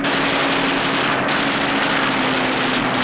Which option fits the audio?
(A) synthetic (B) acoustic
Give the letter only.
B